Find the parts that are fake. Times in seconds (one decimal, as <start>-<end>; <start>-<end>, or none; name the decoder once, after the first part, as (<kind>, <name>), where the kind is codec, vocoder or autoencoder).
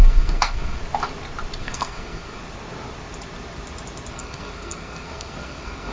0.0-0.8 (codec, SNAC); 1.6-2.4; 4.1-5.9